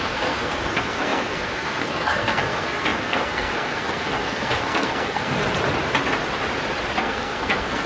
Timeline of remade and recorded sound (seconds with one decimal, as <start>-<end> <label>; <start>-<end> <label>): 0.0-5.4 remade; 5.4-7.0 recorded; 7.0-7.9 remade